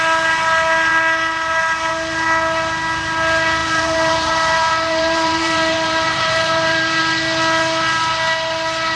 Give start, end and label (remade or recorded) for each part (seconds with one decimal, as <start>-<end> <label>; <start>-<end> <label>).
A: 0.0-3.6 recorded; 3.6-7.0 remade; 7.0-9.0 recorded